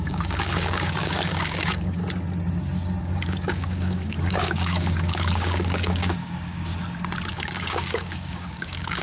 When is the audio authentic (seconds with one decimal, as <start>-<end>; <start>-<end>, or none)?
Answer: 2.0-3.0; 6.7-7.3